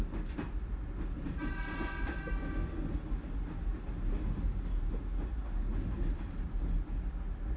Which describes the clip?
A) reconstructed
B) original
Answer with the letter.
B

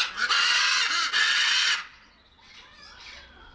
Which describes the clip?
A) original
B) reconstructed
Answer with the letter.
B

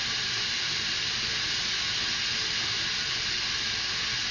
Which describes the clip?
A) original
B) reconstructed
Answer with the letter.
A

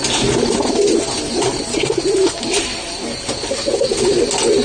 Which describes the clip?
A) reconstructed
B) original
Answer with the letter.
B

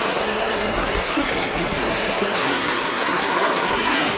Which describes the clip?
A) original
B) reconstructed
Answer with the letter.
B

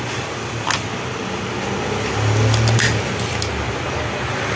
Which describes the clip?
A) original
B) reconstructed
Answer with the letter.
A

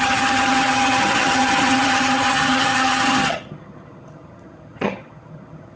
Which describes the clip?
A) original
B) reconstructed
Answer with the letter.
B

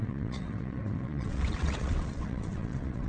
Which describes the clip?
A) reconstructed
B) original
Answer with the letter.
A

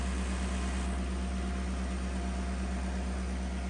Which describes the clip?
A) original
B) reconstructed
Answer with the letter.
A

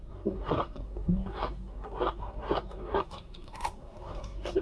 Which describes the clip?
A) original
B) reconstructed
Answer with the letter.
B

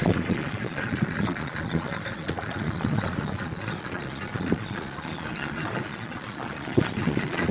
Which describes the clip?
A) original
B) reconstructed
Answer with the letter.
B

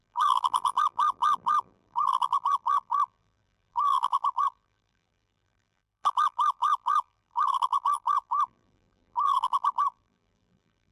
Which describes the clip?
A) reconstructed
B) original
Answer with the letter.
A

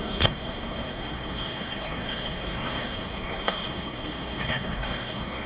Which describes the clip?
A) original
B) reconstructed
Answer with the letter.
B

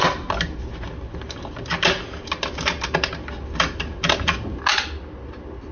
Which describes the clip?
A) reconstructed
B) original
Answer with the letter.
B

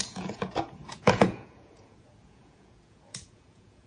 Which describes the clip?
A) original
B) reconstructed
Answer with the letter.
B